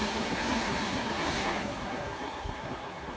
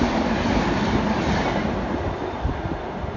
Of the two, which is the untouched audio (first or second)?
second